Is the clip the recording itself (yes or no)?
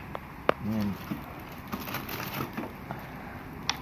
yes